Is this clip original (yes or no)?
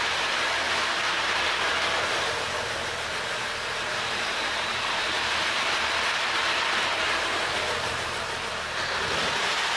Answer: no